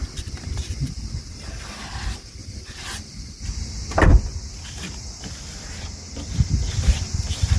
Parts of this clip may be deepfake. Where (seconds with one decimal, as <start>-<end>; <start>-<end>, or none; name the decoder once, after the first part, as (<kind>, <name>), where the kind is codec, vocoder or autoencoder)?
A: 0.0-2.4 (vocoder, BigVGAN v2); 3.1-7.6